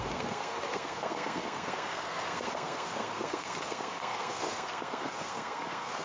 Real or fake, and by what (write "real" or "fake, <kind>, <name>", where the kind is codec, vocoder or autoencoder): fake, codec, SNAC